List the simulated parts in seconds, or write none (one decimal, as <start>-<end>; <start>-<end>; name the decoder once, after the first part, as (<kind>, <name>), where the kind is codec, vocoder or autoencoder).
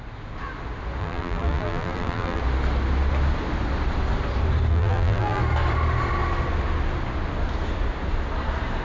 1.0-2.4 (vocoder, BigVGAN v2); 4.7-5.4